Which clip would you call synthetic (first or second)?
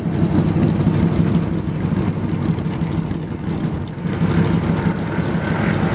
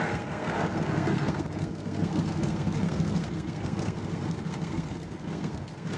second